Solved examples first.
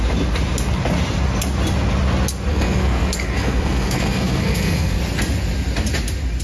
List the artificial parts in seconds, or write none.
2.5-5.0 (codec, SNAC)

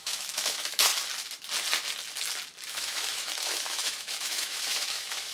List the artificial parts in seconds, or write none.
0.0-0.9 (autoencoder, DAC-VAE); 2.7-5.3

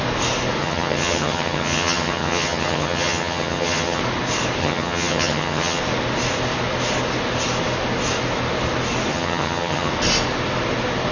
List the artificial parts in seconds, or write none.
0.6-4.0 (vocoder, HiFi-GAN); 4.6-5.8; 9.1-9.9

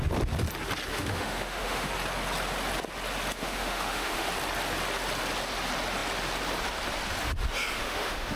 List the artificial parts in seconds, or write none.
0.9-1.9 (autoencoder, DAC-VAE); 3.4-4.3; 7.8-8.4

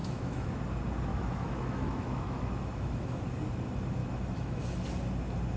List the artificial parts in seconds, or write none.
0.0-0.6 (autoencoder, DAC-VAE); 1.1-3.2; 4.0-4.6

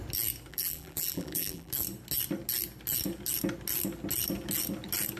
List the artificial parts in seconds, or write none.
0.5-1.7 (vocoder, BigVGAN v2)

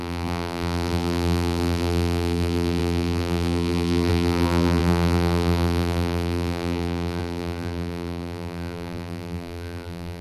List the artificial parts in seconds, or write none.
0.0-10.2 (vocoder, BigVGAN v2)

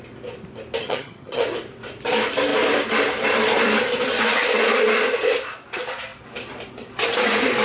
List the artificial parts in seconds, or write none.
0.8-1.4 (vocoder, HiFi-GAN)